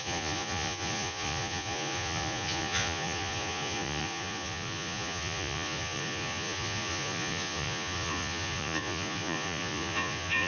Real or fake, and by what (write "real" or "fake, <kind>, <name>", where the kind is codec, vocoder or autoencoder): fake, vocoder, Vocos